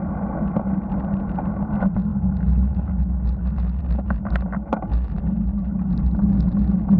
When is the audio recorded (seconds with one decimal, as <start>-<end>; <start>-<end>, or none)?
0.0-7.0